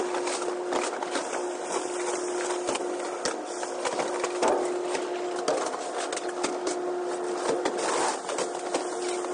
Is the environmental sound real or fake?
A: real